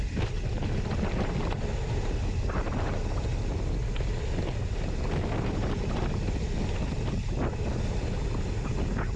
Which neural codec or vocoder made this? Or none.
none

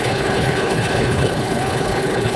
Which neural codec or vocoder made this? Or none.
codec, HILCodec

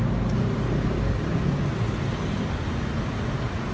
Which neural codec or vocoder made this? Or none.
none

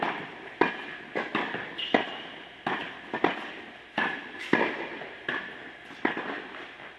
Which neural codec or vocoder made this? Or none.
none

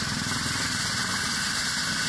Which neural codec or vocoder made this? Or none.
none